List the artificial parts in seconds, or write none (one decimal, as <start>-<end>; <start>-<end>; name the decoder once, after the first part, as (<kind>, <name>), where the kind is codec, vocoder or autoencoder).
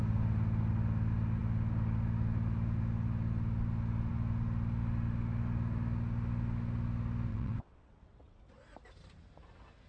7.3-8.5 (vocoder, WaveNeXt)